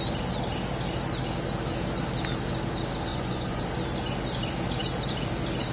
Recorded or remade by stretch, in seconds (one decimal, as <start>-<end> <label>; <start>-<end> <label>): 0.0-3.1 recorded; 3.1-3.6 remade; 3.6-5.7 recorded